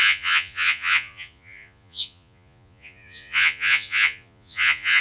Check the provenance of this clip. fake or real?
fake